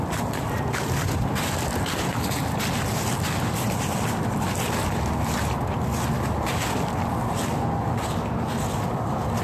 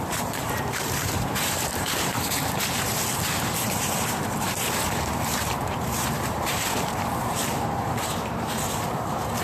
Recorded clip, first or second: first